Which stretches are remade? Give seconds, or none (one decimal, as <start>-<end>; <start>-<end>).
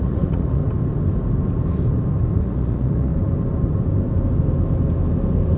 0.0-0.6; 2.4-3.1